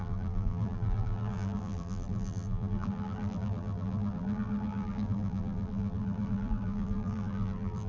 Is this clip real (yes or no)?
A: no